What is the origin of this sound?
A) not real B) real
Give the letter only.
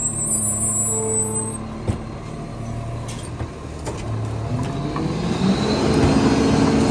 B